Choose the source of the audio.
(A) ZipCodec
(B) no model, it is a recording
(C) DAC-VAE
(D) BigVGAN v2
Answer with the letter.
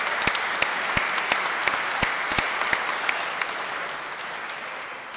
B